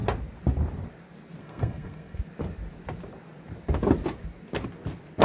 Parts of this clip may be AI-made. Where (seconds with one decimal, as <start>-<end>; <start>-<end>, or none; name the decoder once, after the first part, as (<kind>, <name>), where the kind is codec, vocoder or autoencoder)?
1.4-2.2 (codec, SNAC)